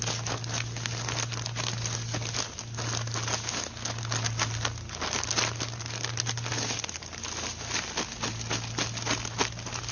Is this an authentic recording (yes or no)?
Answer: yes